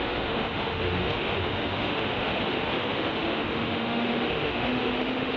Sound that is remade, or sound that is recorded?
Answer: remade